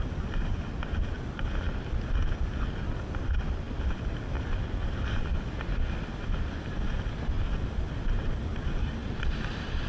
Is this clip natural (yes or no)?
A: yes